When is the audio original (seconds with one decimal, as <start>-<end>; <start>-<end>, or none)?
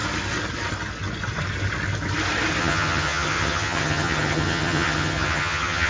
0.0-2.6